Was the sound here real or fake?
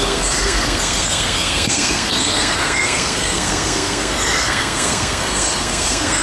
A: fake